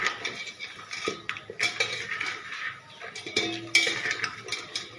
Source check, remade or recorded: recorded